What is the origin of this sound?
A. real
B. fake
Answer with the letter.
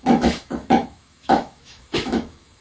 B